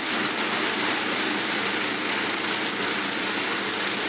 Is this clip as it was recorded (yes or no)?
yes